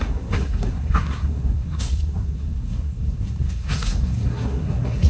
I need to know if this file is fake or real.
fake